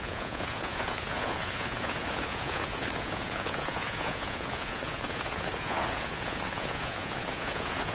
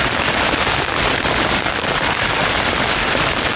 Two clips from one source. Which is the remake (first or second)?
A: first